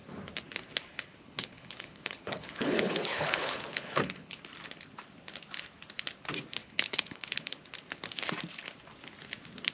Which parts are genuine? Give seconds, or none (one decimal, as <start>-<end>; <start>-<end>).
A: 0.0-0.9; 4.4-6.6; 7.6-9.7